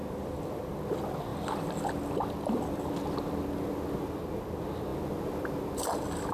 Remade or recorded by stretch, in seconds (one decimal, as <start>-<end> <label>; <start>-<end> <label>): 0.0-0.6 remade; 0.6-1.3 recorded; 1.3-1.9 remade; 1.9-6.3 recorded